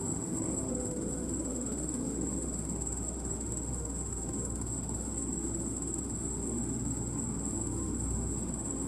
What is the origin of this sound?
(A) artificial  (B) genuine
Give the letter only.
A